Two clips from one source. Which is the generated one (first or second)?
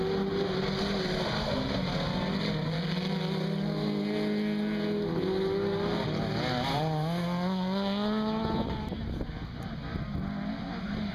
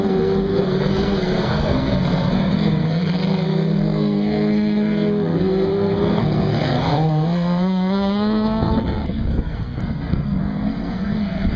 second